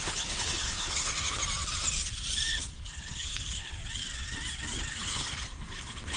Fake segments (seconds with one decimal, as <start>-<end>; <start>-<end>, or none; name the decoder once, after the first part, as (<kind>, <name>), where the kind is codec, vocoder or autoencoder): 0.0-1.4 (codec, HILCodec); 2.5-3.8; 4.9-6.2